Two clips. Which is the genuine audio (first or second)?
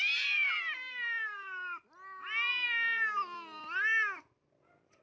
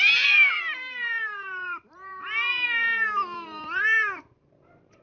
first